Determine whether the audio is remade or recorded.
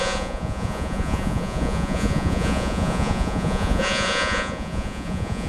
remade